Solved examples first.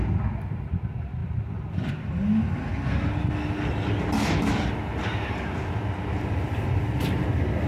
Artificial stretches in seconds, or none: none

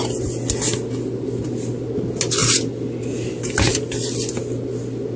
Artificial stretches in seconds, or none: none

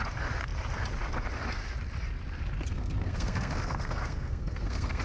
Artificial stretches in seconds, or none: 2.7-5.0

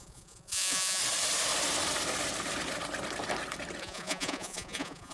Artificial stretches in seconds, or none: 0.0-1.0; 3.8-5.1

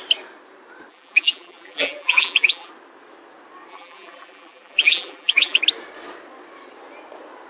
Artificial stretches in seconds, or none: 0.9-2.7; 3.7-5.6

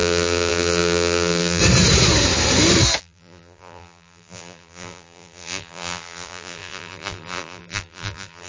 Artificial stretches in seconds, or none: 0.0-1.6; 3.0-8.5